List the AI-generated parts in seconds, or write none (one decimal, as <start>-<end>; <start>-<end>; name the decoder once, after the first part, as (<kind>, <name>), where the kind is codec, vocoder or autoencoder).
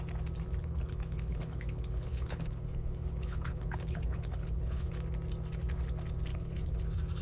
0.6-4.9 (codec, HILCodec); 6.3-6.8